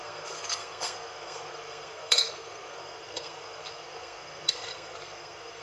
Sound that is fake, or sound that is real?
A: fake